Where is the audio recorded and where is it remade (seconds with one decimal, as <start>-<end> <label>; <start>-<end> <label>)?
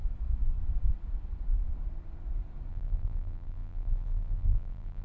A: 0.0-2.7 recorded; 2.7-5.0 remade